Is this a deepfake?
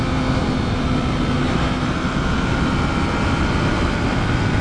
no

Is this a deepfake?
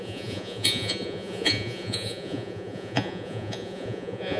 yes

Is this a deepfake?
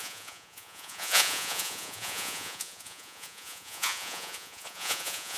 yes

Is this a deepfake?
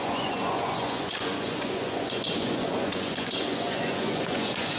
yes